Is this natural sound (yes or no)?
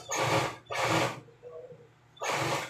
yes